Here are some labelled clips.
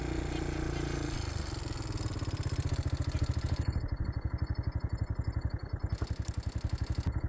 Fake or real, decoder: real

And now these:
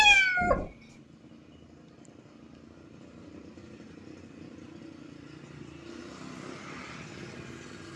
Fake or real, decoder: real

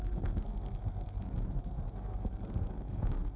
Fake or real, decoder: fake, codec, SNAC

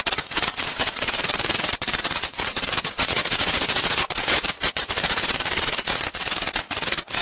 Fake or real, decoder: fake, vocoder, WaveNeXt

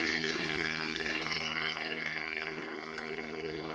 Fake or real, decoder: fake, codec, SNAC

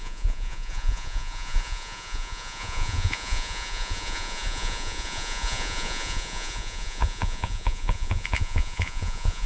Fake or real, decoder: fake, vocoder, Vocos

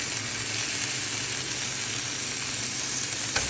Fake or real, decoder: real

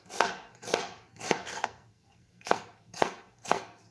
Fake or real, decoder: fake, codec, SNAC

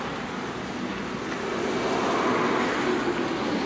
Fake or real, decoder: real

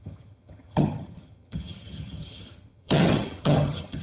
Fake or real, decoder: fake, vocoder, HiFi-GAN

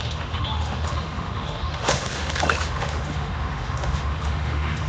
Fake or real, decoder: fake, autoencoder, DAC-VAE